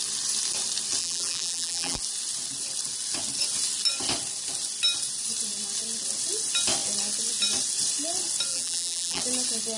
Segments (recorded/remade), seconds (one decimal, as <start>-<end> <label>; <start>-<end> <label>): 0.0-1.0 recorded; 1.0-2.0 remade; 2.0-8.5 recorded; 8.5-9.2 remade; 9.2-9.8 recorded